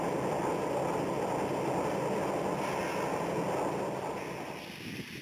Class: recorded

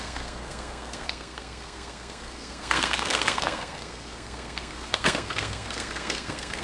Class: remade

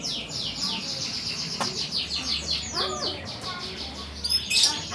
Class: recorded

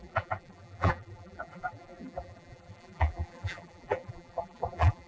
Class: remade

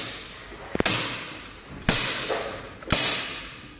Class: recorded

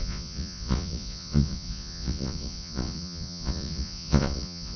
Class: remade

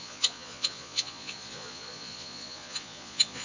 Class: remade